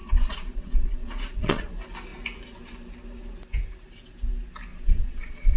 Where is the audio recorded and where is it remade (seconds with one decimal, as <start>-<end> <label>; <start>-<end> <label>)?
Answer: 0.0-1.7 remade; 1.7-4.7 recorded; 4.7-5.6 remade